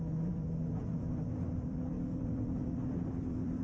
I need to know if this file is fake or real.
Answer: fake